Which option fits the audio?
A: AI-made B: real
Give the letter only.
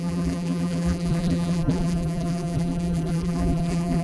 A